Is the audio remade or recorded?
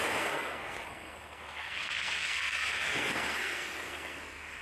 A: remade